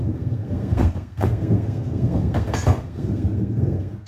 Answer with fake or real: fake